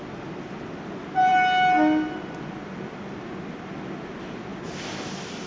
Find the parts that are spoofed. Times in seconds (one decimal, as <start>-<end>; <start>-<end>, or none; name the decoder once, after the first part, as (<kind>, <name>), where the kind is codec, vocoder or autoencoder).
none